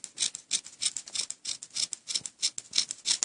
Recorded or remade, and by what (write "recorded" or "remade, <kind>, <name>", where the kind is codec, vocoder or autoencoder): recorded